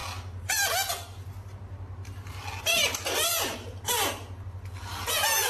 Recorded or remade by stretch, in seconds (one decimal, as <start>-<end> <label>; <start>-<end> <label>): 0.0-5.5 recorded